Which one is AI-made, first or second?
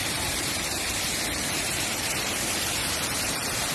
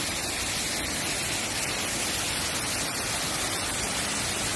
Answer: first